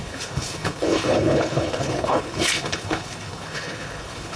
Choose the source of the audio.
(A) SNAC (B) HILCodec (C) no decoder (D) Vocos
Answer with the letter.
B